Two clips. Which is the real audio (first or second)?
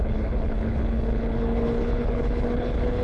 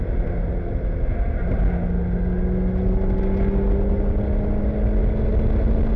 second